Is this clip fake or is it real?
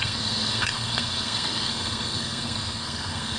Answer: fake